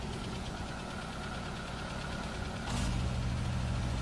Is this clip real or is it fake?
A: fake